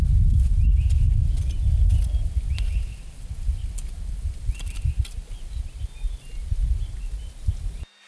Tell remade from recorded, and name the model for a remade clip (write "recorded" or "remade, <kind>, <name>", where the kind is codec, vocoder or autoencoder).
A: recorded